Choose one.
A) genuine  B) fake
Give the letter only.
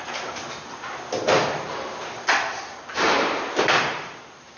B